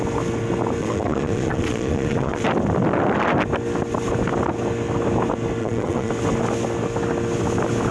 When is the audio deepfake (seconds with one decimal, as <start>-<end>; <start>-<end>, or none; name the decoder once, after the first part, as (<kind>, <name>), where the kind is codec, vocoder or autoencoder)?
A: 0.8-2.4 (vocoder, Vocos); 5.6-6.1